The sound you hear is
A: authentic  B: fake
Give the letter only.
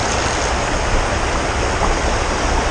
A